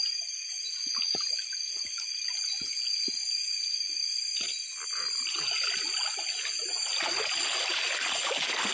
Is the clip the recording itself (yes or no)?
yes